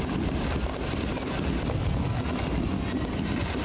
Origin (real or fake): real